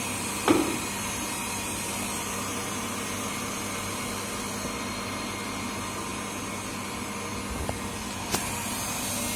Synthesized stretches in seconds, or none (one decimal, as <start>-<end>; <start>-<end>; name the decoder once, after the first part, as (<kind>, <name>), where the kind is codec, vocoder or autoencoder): none